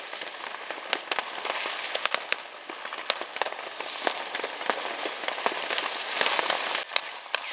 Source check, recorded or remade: recorded